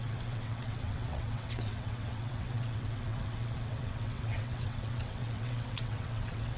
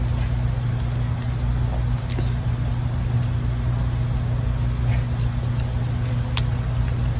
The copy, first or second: first